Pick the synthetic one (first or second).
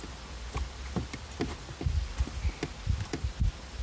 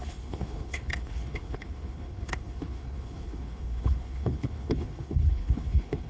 second